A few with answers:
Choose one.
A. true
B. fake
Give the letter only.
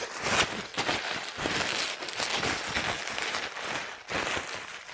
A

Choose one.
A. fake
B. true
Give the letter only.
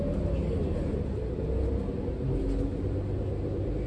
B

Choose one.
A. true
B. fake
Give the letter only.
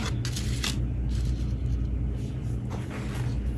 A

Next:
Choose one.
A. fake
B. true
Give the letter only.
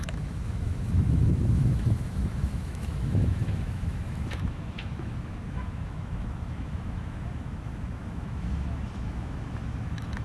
A